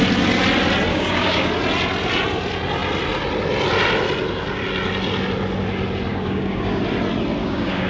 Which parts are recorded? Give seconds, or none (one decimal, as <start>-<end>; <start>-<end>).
0.0-0.9; 1.5-6.1; 6.8-7.4